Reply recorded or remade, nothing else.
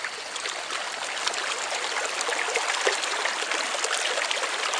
recorded